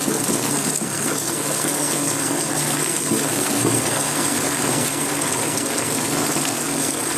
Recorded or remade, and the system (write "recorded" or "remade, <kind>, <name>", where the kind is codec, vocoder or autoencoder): remade, codec, SNAC